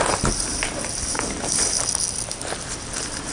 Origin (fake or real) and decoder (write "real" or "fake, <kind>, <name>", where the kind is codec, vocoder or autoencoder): real